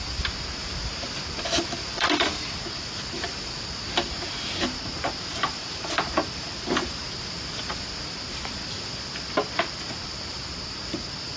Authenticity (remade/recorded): recorded